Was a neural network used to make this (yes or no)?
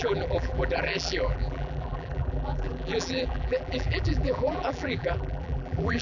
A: yes